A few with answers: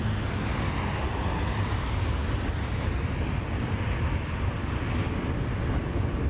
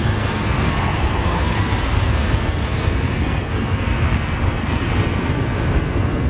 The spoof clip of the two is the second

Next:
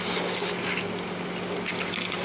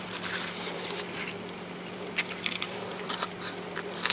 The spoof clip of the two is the second